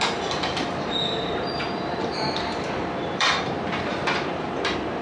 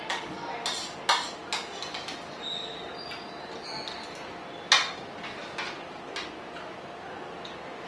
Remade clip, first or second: first